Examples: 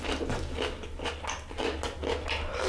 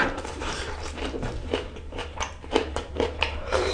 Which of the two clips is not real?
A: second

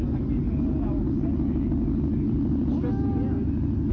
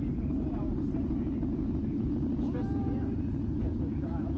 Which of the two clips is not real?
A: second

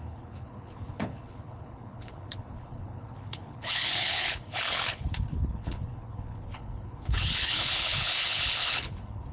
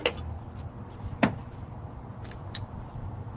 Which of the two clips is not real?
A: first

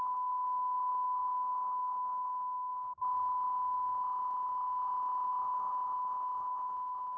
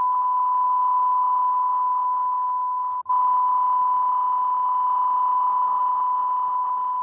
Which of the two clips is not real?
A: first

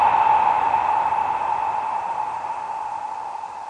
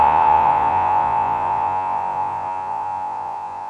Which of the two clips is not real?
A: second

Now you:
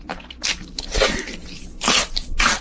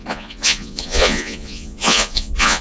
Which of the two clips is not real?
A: second